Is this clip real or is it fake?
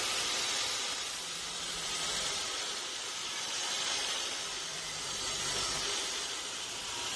real